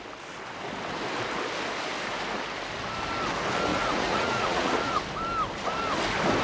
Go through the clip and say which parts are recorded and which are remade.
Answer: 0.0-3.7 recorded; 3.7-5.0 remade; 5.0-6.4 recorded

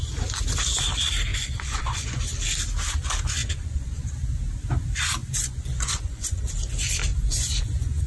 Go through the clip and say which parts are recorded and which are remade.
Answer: 0.0-1.3 recorded; 1.3-2.2 remade; 2.2-3.4 recorded; 3.4-4.1 remade; 4.1-5.2 recorded; 5.2-6.5 remade; 6.5-7.1 recorded; 7.1-8.1 remade

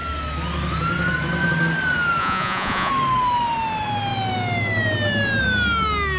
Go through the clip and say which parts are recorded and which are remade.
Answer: 0.0-2.2 recorded; 2.2-2.9 remade; 2.9-6.2 recorded